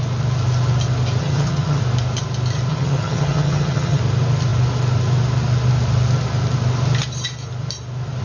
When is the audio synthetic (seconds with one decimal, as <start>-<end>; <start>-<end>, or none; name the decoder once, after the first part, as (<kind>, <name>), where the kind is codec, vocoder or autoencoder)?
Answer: 1.2-1.8 (vocoder, HiFi-GAN); 2.7-4.0